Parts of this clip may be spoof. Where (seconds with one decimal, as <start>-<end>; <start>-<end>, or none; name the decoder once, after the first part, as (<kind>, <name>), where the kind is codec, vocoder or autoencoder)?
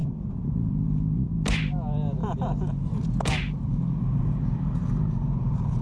0.0-0.7 (vocoder, BigVGAN v2); 2.2-5.8